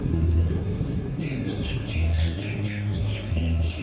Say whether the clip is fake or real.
fake